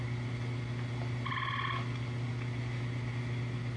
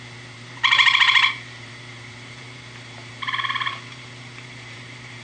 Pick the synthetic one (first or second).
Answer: second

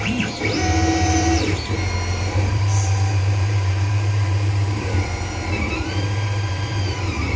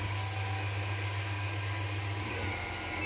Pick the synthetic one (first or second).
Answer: first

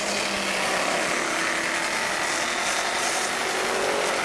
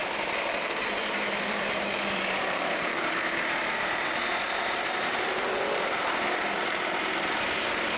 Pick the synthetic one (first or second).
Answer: second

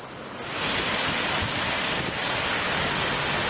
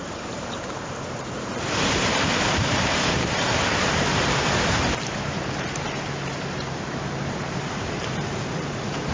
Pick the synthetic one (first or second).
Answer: second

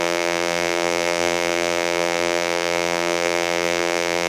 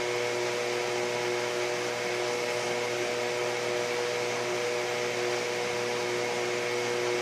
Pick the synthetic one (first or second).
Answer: first